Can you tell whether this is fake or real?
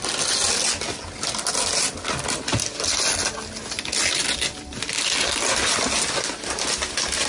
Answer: real